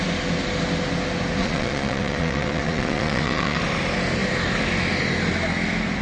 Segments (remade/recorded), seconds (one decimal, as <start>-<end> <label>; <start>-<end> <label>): 0.0-1.4 recorded; 1.4-3.6 remade; 3.6-6.0 recorded